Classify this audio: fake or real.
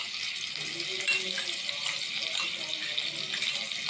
real